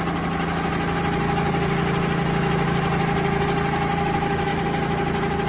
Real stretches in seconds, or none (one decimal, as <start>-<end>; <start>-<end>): 0.0-5.5